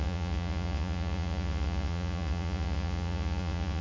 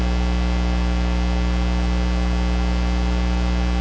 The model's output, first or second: first